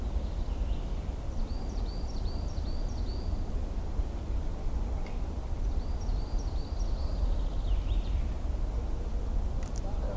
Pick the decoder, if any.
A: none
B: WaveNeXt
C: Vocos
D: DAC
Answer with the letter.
A